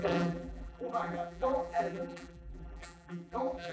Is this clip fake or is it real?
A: fake